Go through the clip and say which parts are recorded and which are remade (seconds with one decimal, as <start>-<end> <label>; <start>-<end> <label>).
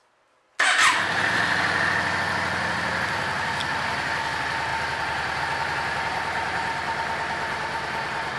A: 0.0-8.4 recorded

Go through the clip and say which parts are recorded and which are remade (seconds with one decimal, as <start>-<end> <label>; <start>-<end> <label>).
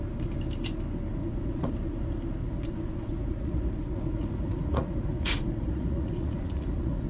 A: 0.0-1.2 recorded; 1.2-1.7 remade; 1.7-2.4 recorded; 2.4-7.1 remade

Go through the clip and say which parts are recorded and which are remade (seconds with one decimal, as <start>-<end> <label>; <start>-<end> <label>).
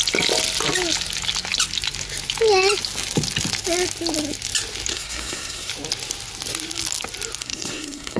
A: 0.0-4.9 recorded; 4.9-5.7 remade; 5.7-7.4 recorded; 7.4-8.2 remade